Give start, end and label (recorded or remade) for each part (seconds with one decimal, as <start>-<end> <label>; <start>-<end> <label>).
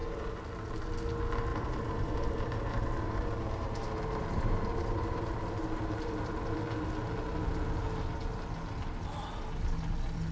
0.0-0.9 remade; 0.9-1.5 recorded; 1.5-6.6 remade; 6.6-10.3 recorded